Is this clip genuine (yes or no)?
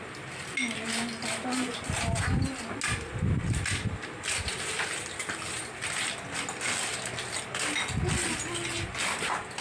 yes